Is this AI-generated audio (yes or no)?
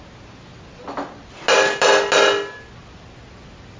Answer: no